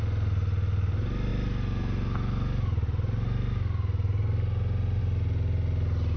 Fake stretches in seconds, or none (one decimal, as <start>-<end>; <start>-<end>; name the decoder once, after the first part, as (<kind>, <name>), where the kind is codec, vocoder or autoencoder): none

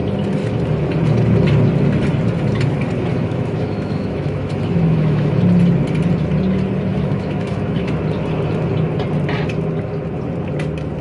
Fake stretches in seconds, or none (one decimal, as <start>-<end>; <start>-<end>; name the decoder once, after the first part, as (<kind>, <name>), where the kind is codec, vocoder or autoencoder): 3.1-5.4 (autoencoder, DAC-VAE); 6.9-8.0

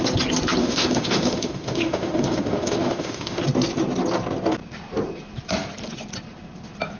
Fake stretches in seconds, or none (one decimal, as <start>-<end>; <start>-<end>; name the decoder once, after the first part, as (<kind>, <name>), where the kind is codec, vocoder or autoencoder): 0.6-3.4 (autoencoder, DAC-VAE)

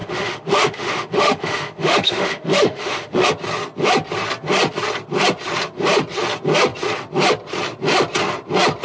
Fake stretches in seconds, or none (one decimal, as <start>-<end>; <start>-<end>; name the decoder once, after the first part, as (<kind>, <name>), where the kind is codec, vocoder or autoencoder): 0.0-3.3 (autoencoder, DAC-VAE)

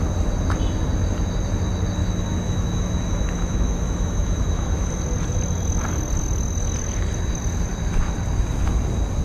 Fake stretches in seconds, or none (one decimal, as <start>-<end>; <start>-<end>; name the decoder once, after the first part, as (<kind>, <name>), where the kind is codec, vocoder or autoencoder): 2.0-4.9 (autoencoder, DAC-VAE)